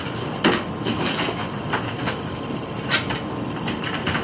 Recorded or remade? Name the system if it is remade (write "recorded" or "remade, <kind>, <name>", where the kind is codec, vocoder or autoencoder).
recorded